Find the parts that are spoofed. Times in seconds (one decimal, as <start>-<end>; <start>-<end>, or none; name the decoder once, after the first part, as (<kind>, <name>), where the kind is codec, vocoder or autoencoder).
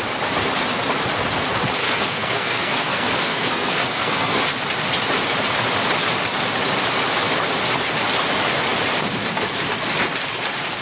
1.8-4.4 (codec, SNAC)